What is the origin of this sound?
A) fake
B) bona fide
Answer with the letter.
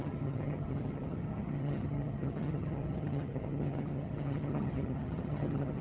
A